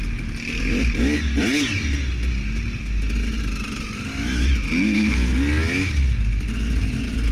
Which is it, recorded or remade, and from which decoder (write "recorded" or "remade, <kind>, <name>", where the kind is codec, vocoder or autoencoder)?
recorded